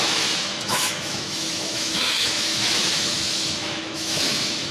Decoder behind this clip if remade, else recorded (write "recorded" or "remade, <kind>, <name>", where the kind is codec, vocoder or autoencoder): remade, autoencoder, DAC-VAE